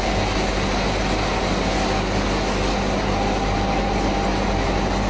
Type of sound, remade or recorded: recorded